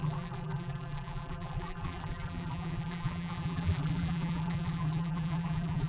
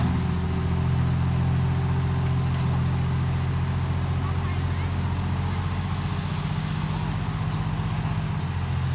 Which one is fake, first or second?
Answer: first